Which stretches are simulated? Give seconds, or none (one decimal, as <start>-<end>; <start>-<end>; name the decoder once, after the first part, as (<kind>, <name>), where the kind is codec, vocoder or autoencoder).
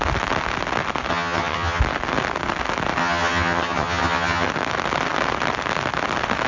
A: 1.1-1.8 (vocoder, HiFi-GAN); 3.0-4.5